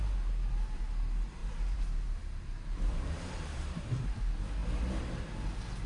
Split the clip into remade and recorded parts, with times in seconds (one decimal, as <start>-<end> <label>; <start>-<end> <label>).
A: 0.0-1.4 recorded; 1.4-4.0 remade; 4.0-5.9 recorded